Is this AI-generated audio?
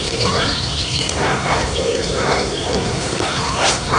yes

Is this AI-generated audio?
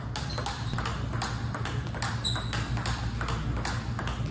no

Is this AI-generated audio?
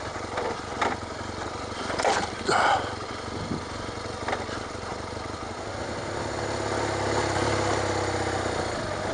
no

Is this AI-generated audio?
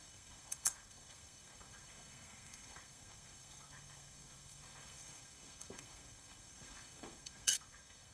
yes